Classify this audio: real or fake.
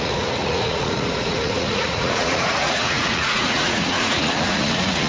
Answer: fake